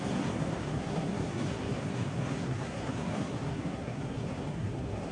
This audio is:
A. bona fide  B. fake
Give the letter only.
B